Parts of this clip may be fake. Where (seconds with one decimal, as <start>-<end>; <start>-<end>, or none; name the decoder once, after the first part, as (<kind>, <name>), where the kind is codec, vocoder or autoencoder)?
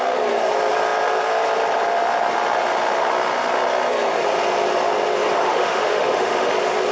5.5-6.5 (autoencoder, DAC-VAE)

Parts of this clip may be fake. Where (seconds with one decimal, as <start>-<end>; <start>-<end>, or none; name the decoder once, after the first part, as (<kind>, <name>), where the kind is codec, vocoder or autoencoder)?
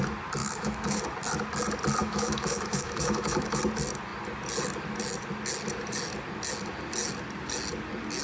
0.4-1.0 (autoencoder, DAC-VAE); 2.0-3.6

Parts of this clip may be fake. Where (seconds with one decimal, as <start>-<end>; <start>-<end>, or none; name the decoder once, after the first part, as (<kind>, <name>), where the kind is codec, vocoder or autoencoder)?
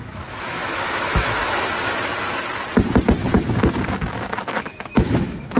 0.0-1.4 (autoencoder, DAC-VAE); 4.1-5.6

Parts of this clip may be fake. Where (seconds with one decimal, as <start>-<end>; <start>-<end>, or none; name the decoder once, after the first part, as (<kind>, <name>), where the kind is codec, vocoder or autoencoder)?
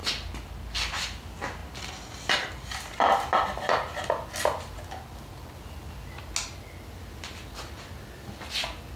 none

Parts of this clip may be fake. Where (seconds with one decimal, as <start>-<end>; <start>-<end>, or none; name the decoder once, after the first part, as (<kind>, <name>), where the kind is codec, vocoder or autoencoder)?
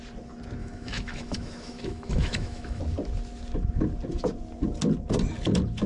0.6-2.8 (autoencoder, DAC-VAE)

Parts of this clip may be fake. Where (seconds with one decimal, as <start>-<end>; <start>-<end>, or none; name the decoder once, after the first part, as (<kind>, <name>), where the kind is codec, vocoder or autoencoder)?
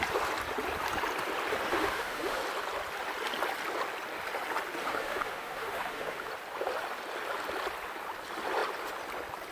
1.7-2.4 (autoencoder, DAC-VAE); 4.8-6.3